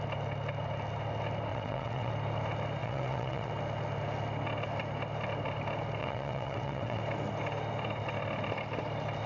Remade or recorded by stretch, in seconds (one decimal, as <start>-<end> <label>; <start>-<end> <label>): 0.0-1.5 recorded; 1.5-2.1 remade; 2.1-2.8 recorded; 2.8-3.5 remade; 3.5-6.0 recorded; 6.0-7.0 remade; 7.0-9.3 recorded